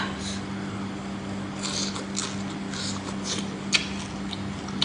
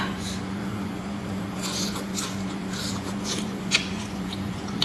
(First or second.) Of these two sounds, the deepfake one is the second